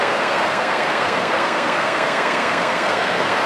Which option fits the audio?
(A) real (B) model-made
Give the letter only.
B